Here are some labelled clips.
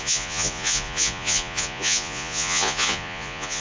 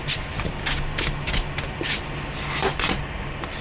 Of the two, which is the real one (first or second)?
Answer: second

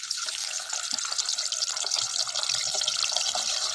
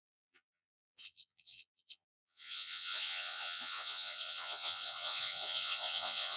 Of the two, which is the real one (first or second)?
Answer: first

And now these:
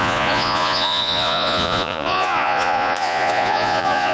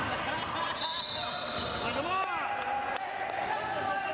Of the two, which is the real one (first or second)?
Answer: second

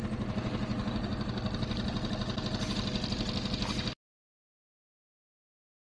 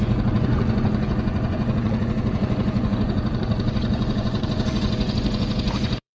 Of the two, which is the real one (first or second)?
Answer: first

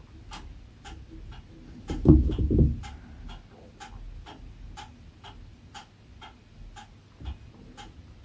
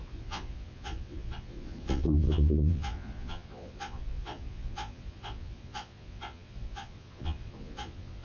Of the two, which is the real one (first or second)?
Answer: first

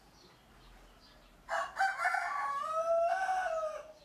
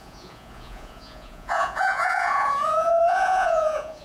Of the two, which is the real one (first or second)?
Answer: first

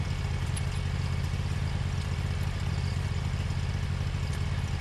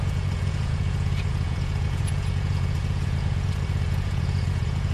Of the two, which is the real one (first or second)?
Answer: first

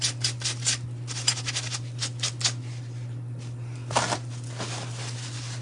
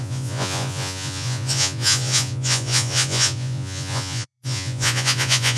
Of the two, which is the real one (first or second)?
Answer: first